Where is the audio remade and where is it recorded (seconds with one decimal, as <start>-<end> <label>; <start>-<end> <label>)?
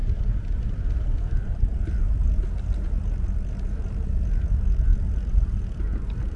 0.0-6.4 recorded